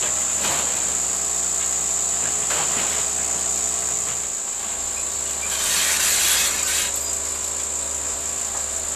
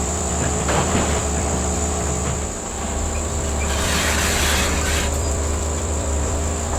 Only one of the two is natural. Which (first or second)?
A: first